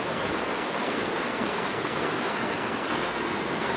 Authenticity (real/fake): fake